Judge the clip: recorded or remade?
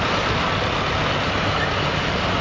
recorded